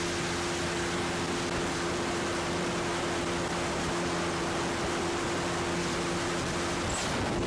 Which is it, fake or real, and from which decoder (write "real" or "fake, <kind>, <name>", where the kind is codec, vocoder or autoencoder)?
real